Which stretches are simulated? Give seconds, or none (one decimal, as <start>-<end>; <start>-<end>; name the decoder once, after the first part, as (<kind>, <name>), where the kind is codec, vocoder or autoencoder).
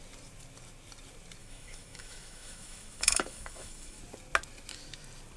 1.4-4.0 (autoencoder, DAC-VAE)